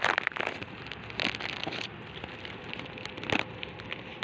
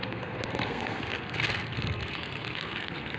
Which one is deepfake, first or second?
second